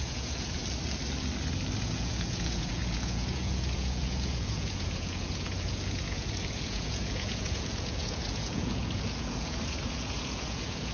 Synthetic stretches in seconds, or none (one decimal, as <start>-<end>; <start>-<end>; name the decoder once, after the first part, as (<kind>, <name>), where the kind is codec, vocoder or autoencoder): 0.0-0.6 (vocoder, Vocos); 1.8-10.9